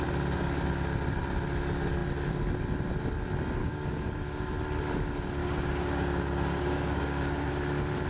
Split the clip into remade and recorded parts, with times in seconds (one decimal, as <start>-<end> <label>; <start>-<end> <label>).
0.0-3.6 recorded; 3.6-4.5 remade; 4.5-5.4 recorded; 5.4-7.5 remade; 7.5-8.1 recorded

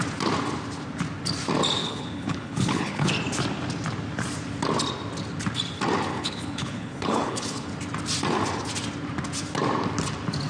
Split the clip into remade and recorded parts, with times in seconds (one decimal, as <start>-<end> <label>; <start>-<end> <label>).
0.0-1.8 recorded; 1.8-3.1 remade; 3.1-6.1 recorded; 6.1-7.7 remade; 7.7-10.5 recorded

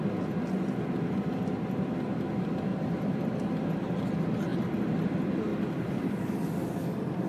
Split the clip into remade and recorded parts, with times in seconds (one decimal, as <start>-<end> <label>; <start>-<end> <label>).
0.0-5.5 recorded; 5.5-6.3 remade; 6.3-7.3 recorded

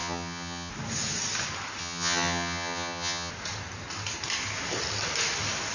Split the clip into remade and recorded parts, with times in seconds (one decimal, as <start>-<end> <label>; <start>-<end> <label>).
0.0-0.7 remade; 0.7-1.8 recorded; 1.8-3.3 remade; 3.3-5.7 recorded